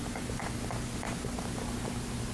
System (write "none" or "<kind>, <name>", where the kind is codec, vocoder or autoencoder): none